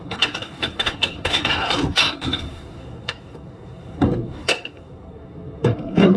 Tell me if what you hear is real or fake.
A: fake